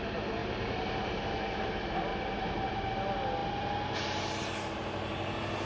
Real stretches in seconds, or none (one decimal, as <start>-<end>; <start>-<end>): 0.0-0.4; 1.6-2.1; 2.9-5.7